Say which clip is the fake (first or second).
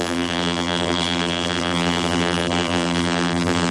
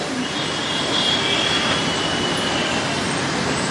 first